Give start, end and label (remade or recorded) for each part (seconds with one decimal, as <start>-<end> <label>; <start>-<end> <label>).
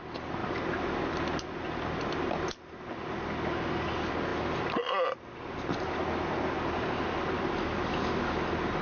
0.0-8.8 recorded